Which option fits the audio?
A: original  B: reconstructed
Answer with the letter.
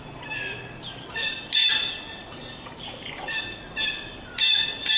A